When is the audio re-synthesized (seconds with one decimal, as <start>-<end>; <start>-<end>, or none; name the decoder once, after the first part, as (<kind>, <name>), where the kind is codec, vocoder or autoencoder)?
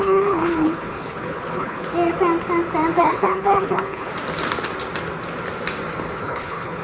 0.0-1.9 (codec, HILCodec); 3.0-4.1; 6.2-6.8